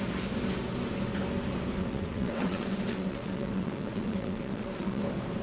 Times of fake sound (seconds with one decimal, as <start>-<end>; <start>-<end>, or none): 1.8-5.0